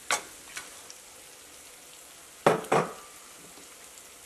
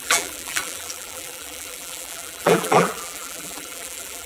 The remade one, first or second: second